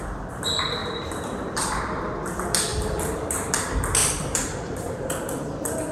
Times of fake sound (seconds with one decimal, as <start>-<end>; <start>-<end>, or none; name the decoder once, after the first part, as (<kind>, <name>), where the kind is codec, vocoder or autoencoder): 0.8-1.8 (vocoder, BigVGAN v2); 2.7-3.5; 4.0-5.3